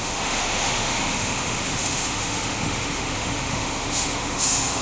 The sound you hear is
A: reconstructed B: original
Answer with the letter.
A